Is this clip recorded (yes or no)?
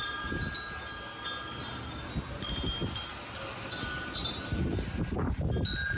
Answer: yes